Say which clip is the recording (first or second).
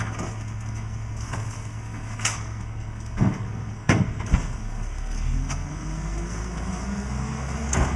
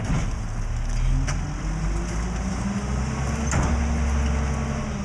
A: second